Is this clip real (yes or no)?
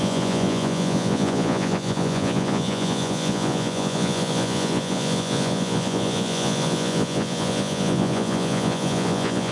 no